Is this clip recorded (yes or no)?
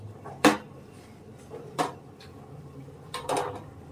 no